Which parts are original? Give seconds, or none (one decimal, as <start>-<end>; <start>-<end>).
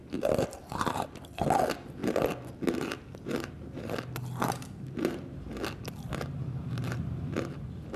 0.0-6.6; 7.2-8.0